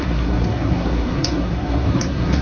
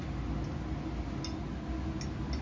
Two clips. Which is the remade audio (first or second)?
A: first